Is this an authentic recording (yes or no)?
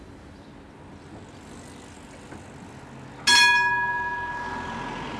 yes